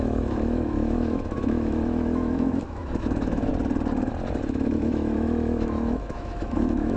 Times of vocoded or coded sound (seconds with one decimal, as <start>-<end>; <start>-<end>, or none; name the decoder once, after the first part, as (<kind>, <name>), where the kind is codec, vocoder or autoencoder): 0.0-3.5 (autoencoder, DAC-VAE); 4.4-7.0